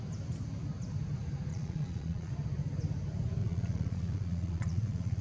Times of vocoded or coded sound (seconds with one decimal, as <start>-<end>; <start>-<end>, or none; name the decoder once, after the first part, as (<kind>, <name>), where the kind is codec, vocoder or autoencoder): 1.5-2.3 (vocoder, Vocos); 3.4-5.2